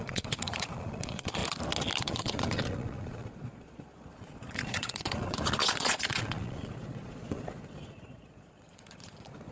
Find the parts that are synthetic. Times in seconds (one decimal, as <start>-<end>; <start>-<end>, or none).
0.0-1.4; 2.0-9.5